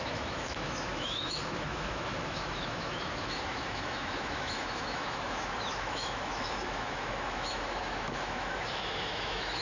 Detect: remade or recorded remade